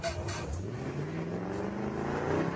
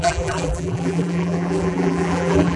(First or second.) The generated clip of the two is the second